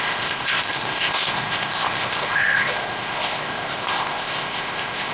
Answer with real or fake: fake